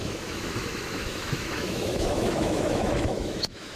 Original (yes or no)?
no